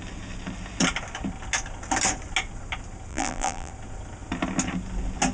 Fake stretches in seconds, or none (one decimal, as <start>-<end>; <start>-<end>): 3.1-3.7